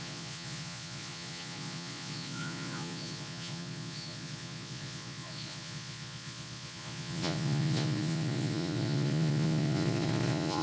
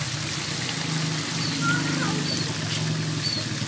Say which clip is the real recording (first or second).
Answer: second